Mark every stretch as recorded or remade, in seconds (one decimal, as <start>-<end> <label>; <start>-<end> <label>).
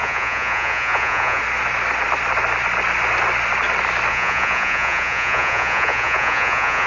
0.0-1.4 remade; 1.4-4.1 recorded; 4.1-6.9 remade